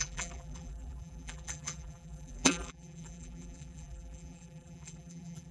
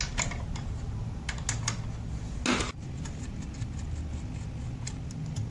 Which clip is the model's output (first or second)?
first